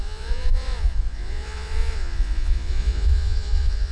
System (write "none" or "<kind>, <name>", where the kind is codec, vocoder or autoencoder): vocoder, Vocos